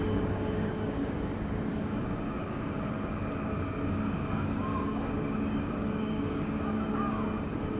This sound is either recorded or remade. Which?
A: remade